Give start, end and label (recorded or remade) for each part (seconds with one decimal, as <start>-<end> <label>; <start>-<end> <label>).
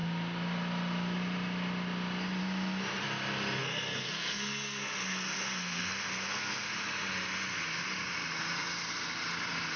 0.0-3.6 recorded; 3.6-6.7 remade; 6.7-9.8 recorded